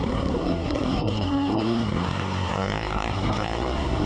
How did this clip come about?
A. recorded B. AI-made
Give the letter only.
B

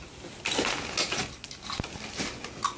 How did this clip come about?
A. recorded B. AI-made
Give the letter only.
A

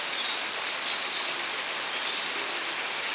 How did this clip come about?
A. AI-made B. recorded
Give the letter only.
B